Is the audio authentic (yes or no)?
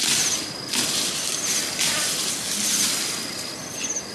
yes